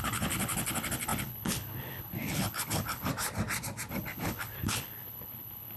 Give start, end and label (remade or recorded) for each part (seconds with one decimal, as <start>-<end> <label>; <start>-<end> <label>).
0.0-3.1 remade; 3.1-3.9 recorded; 3.9-5.8 remade